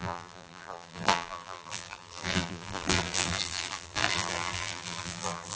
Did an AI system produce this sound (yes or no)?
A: yes